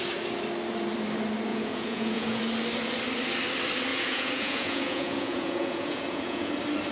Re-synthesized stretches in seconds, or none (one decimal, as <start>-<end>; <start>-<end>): 1.5-2.4; 3.9-6.5